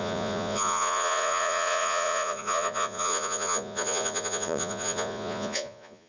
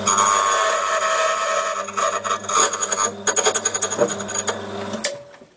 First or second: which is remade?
first